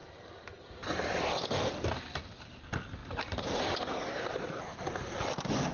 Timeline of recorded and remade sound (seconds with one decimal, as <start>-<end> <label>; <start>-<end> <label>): 0.0-1.7 remade; 1.7-3.0 recorded; 3.0-4.8 remade; 4.8-5.7 recorded